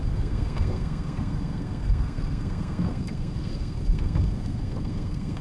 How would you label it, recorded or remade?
remade